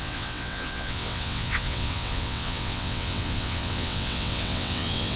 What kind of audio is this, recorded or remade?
remade